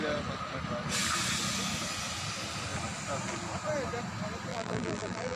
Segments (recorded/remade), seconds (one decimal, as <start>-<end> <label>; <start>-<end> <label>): 0.0-4.5 recorded; 4.5-5.4 remade